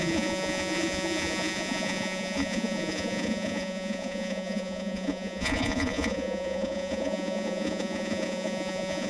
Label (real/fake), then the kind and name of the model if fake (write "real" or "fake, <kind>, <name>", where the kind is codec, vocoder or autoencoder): fake, vocoder, Vocos